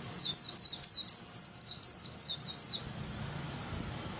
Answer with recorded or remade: recorded